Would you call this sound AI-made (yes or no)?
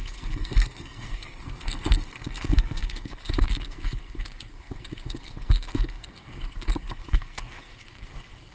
yes